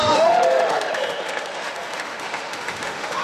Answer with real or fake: fake